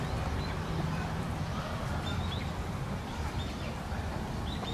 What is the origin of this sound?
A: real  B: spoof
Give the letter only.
A